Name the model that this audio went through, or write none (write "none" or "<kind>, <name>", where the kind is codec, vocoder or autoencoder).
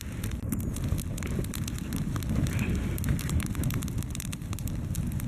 none